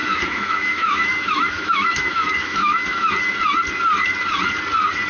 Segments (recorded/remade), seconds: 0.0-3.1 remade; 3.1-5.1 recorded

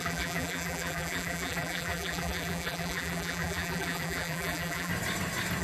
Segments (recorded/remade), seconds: 0.0-4.9 remade; 4.9-5.6 recorded